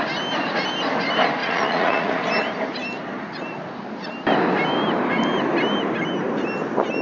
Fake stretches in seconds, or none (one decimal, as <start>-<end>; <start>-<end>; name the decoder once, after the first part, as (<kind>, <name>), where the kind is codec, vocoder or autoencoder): 1.4-2.2 (vocoder, Vocos)